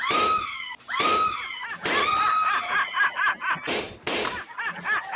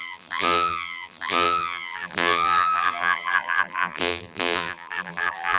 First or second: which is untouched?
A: first